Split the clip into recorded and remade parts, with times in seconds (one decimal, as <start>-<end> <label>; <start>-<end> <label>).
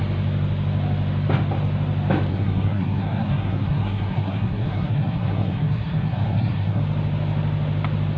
0.0-2.3 recorded; 2.3-6.8 remade; 6.8-8.2 recorded